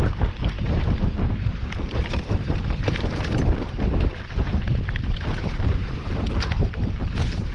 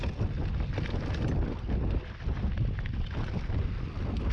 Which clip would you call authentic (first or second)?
second